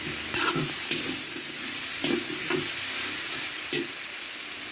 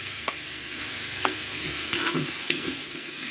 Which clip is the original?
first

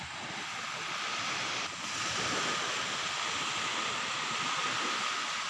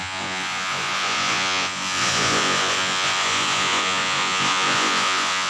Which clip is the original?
first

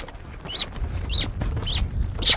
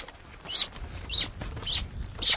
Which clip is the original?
first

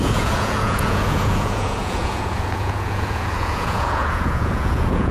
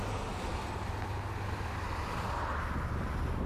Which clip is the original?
second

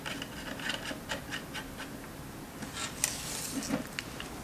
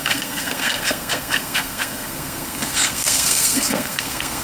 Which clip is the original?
first